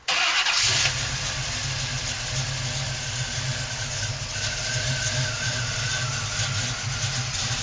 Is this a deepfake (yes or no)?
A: no